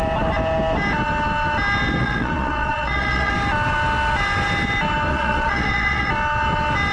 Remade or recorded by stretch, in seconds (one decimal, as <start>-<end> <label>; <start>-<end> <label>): 0.0-2.0 recorded; 2.0-3.3 remade; 3.3-5.1 recorded; 5.1-6.1 remade; 6.1-6.9 recorded